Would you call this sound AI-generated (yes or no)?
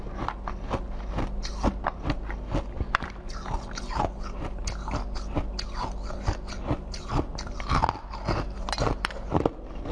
no